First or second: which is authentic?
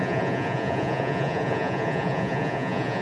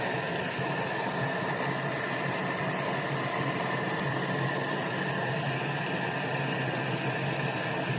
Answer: second